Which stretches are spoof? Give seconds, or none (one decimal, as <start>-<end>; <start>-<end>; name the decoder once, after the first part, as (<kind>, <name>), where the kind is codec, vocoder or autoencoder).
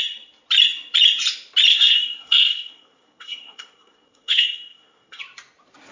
1.7-5.2 (codec, SNAC)